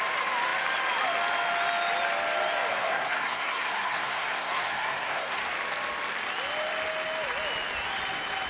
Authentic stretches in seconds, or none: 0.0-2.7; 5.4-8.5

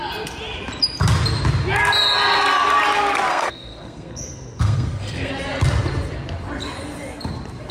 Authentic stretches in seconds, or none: 0.0-3.3; 5.3-7.7

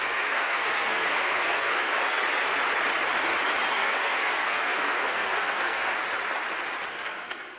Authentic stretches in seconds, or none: 1.9-3.7; 5.9-6.9

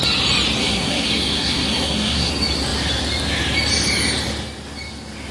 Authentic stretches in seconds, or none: 0.0-0.6; 2.3-5.3

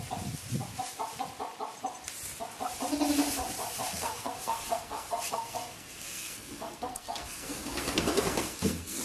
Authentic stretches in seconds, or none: 0.0-3.9

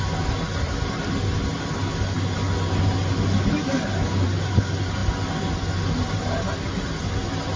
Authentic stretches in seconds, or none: 0.0-7.6